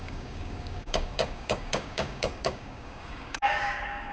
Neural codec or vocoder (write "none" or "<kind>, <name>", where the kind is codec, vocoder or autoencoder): codec, DAC